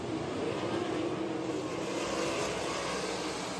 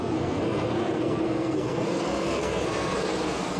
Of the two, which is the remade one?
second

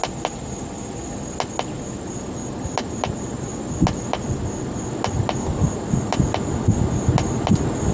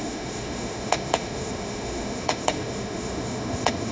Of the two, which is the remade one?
second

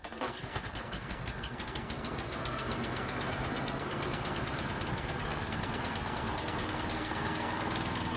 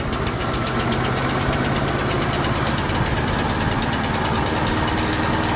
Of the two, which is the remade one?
first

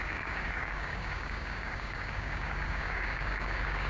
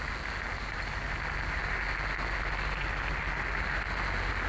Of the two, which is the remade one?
first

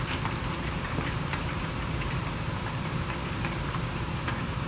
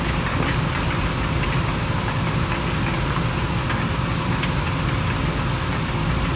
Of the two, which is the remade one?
first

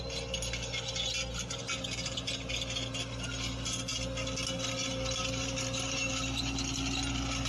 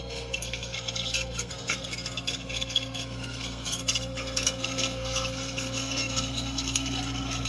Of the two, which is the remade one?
second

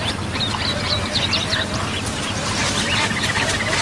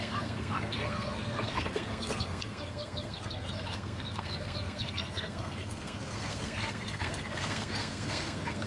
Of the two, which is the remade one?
second